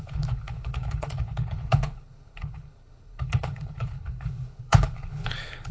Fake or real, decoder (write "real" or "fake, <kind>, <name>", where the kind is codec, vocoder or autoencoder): fake, codec, HILCodec